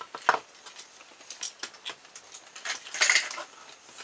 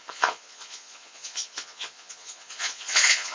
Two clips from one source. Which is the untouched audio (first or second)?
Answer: first